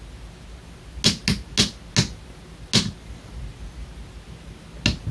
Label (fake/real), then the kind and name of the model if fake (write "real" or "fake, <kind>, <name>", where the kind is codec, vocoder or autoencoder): real